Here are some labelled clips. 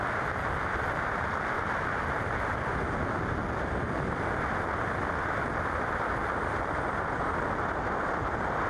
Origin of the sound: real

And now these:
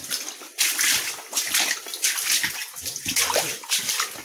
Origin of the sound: real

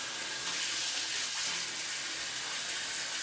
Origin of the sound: real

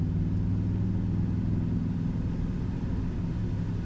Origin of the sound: real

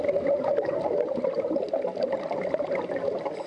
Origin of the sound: real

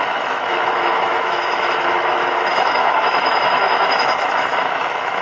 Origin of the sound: fake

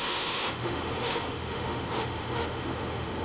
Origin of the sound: fake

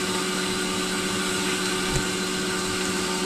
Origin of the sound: real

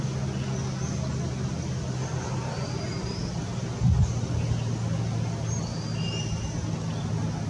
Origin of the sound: real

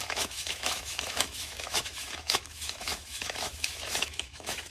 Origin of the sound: fake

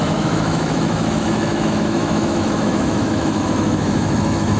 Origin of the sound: fake